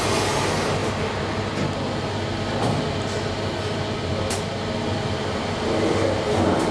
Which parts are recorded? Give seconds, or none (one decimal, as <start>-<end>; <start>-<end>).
0.0-6.7